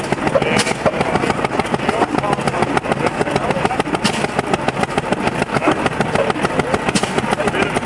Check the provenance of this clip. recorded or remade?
recorded